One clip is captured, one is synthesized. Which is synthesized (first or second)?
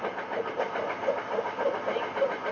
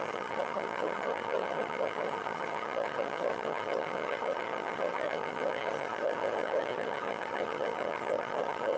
second